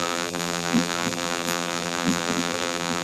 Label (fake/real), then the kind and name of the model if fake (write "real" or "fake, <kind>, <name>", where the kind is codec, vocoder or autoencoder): fake, vocoder, BigVGAN v2